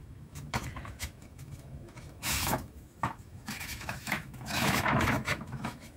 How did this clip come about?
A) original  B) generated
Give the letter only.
B